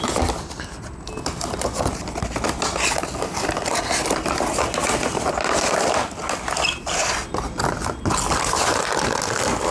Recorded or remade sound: recorded